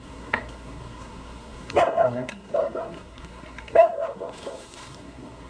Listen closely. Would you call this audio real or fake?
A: fake